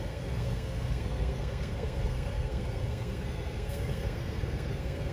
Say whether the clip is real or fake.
fake